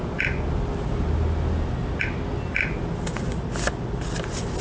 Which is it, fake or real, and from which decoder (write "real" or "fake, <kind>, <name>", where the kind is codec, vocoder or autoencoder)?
real